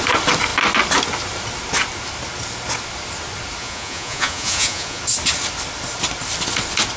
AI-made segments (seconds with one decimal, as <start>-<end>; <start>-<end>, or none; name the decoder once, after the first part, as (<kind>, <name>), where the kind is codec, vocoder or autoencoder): 3.6-5.0 (vocoder, Vocos)